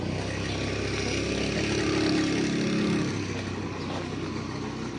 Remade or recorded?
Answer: recorded